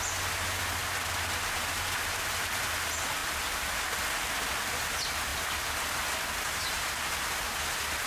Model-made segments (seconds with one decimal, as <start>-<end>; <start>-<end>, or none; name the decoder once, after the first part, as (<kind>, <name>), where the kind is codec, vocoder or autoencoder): 0.8-1.3 (vocoder, BigVGAN v2); 3.2-3.7